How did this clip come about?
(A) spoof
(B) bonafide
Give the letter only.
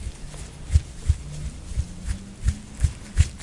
B